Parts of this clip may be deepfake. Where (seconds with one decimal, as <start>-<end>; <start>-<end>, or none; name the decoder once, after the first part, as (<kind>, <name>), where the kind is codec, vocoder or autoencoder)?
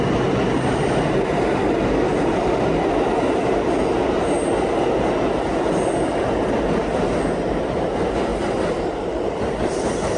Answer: 8.3-10.2 (vocoder, BigVGAN v2)